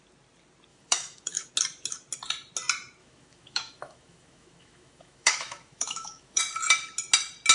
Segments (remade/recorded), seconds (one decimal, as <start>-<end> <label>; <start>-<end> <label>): 0.0-0.7 recorded; 0.7-1.5 remade; 1.5-3.0 recorded; 3.0-6.4 remade; 6.4-7.5 recorded